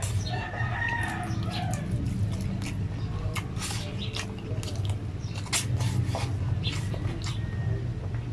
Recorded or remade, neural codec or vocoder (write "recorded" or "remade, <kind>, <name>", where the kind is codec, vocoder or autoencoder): recorded